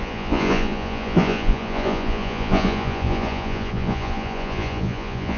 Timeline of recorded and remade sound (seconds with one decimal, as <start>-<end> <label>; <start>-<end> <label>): 0.0-5.4 remade